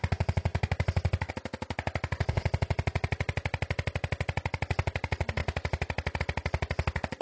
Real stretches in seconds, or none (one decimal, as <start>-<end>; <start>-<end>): 0.0-7.2